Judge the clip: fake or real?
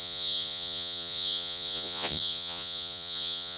fake